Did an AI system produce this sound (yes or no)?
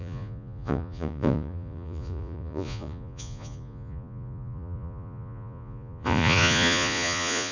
yes